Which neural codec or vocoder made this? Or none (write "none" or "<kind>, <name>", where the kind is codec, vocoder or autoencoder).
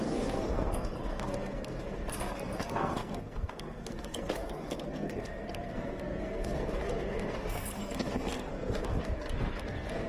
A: codec, SNAC